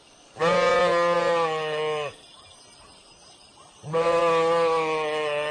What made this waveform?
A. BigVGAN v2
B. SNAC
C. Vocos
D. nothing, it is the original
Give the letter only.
D